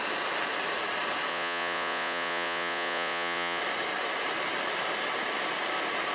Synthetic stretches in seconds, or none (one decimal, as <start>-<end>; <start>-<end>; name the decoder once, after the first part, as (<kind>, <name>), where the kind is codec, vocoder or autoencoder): 1.3-3.6 (vocoder, Vocos)